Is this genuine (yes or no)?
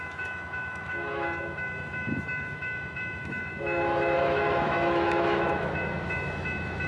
no